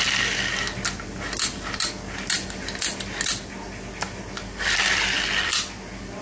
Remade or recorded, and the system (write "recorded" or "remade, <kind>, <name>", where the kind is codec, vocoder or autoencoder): recorded